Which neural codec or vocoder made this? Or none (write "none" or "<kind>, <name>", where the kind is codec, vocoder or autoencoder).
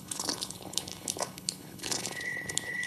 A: codec, HILCodec